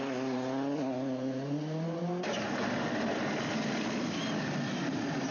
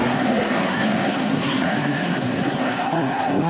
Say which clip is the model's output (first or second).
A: second